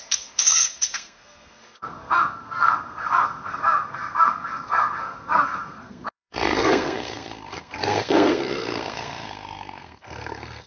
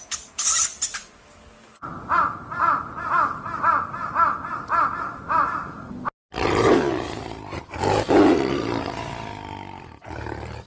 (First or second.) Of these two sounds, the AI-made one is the first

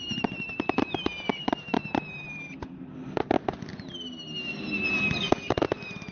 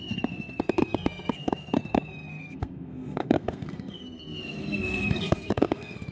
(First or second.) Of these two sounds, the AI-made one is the second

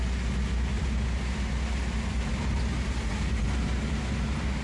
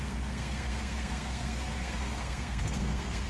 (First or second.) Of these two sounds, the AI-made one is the second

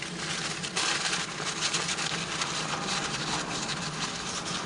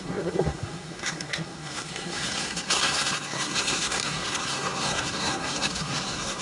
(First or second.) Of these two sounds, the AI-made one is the second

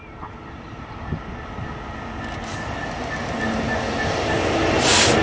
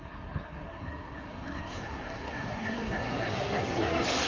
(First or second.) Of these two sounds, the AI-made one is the second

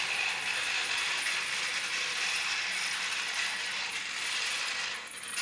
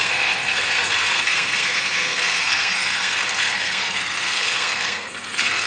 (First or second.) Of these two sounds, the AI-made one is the second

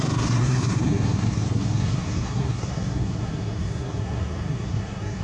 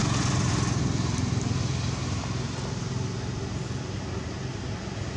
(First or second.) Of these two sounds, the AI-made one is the first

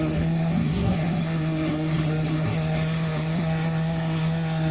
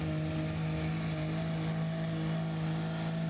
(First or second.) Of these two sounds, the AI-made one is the first